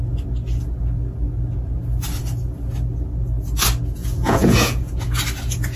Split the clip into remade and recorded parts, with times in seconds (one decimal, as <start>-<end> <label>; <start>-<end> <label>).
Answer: 0.0-4.0 recorded; 4.0-5.0 remade; 5.0-5.8 recorded